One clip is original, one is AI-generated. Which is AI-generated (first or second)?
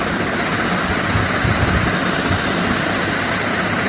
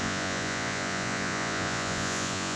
second